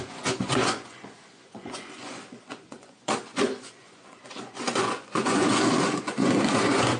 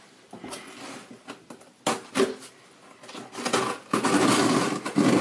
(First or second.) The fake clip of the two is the first